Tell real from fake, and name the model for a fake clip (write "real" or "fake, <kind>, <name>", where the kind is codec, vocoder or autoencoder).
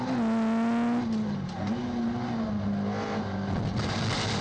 real